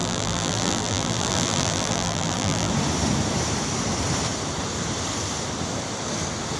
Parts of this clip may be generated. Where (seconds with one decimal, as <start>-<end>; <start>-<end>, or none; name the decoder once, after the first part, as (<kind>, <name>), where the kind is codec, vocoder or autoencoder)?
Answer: 0.0-2.7 (vocoder, BigVGAN v2)